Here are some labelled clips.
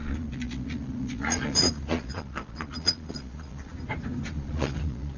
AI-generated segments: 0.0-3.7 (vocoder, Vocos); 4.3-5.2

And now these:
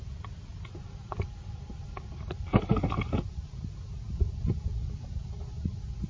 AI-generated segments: none

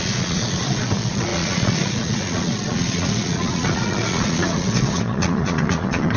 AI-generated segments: 0.0-6.2 (vocoder, Vocos)